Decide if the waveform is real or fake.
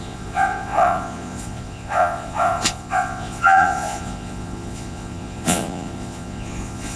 fake